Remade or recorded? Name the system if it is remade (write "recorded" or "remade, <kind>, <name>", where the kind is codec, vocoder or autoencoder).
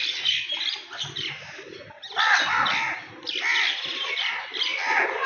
recorded